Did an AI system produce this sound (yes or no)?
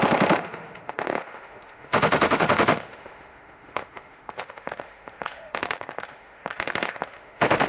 yes